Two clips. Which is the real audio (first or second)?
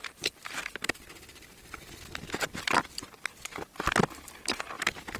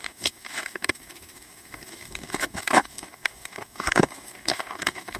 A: first